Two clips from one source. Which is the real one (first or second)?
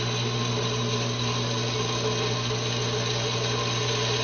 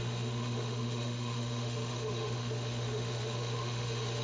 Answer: first